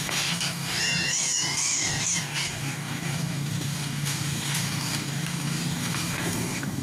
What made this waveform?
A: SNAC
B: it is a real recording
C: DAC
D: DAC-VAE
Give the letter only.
C